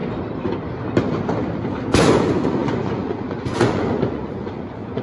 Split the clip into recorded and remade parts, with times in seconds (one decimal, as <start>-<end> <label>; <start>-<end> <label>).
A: 0.0-2.1 recorded; 2.1-5.0 remade